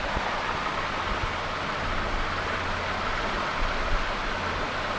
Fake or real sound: real